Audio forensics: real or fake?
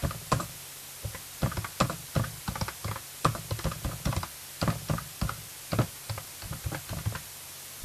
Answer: real